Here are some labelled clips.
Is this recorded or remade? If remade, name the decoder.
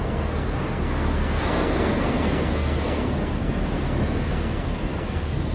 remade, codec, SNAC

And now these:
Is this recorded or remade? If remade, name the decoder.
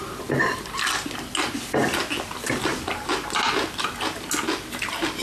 recorded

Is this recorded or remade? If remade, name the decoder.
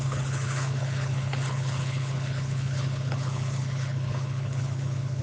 remade, codec, HILCodec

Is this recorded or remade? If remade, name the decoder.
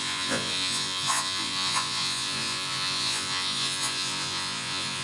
remade, vocoder, Vocos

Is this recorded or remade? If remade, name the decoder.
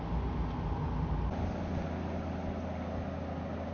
recorded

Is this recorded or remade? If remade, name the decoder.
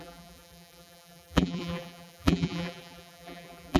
remade, vocoder, BigVGAN v2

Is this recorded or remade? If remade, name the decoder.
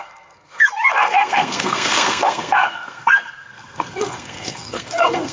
remade, codec, SNAC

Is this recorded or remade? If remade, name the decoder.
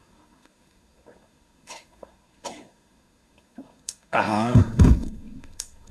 remade, codec, SNAC